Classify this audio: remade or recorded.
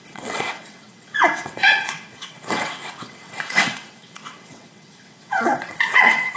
remade